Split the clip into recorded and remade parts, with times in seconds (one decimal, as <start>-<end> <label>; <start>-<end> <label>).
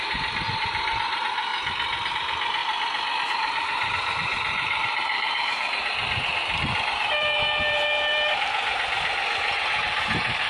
0.0-1.5 remade; 1.5-2.1 recorded; 2.1-2.6 remade; 2.6-3.2 recorded; 3.2-10.5 remade